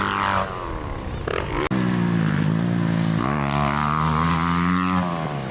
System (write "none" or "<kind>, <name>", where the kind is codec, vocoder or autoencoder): none